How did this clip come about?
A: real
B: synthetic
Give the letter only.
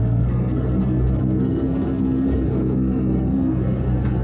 B